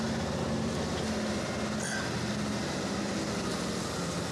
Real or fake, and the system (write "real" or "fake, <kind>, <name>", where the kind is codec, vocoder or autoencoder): real